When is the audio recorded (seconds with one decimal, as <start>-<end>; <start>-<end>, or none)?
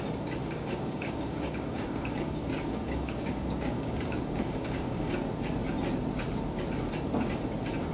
0.0-0.4; 5.1-7.9